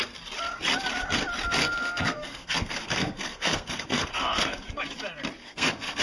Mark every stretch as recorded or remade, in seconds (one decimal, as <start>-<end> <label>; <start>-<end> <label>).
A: 0.0-1.6 recorded; 1.6-4.8 remade; 4.8-5.4 recorded; 5.4-6.0 remade